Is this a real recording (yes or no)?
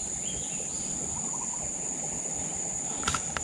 yes